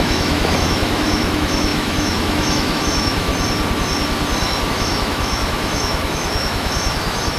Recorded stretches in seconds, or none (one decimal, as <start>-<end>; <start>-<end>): 3.3-4.7